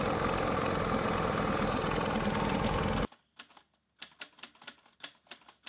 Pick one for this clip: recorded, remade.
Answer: recorded